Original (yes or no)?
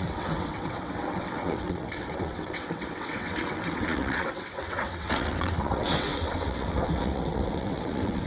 no